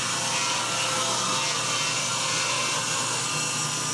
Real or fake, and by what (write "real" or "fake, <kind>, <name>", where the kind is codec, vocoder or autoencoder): real